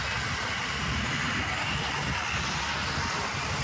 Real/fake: real